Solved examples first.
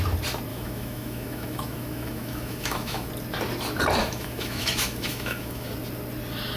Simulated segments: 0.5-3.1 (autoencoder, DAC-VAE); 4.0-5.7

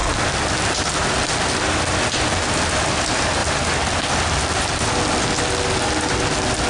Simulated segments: none

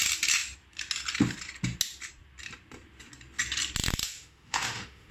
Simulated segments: 4.0-5.1 (autoencoder, DAC-VAE)

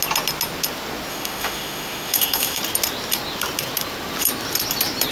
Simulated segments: 1.1-2.6 (autoencoder, DAC-VAE)

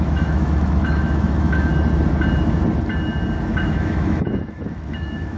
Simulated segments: 0.0-1.7 (autoencoder, DAC-VAE); 3.4-5.4

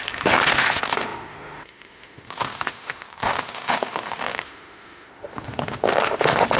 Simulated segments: 0.0-6.6 (autoencoder, DAC-VAE)

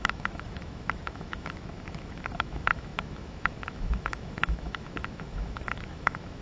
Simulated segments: 0.0-6.4 (autoencoder, DAC-VAE)